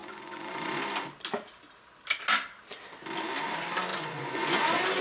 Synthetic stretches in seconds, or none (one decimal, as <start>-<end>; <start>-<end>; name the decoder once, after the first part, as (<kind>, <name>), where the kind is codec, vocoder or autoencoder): 0.0-0.8 (vocoder, Vocos); 3.9-4.6